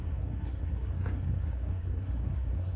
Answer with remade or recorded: remade